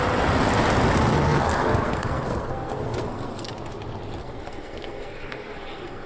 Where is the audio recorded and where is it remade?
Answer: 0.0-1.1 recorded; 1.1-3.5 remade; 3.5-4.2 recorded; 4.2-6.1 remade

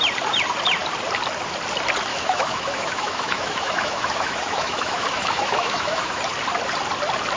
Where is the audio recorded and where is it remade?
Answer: 0.0-2.1 recorded; 2.1-6.2 remade; 6.2-7.4 recorded